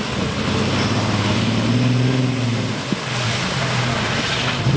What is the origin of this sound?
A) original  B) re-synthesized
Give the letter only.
A